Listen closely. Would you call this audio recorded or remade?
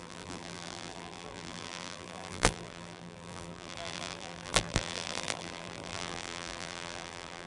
remade